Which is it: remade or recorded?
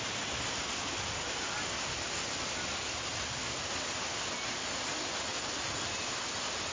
recorded